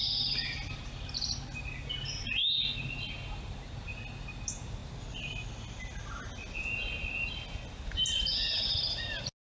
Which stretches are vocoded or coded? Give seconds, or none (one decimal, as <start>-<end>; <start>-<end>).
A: none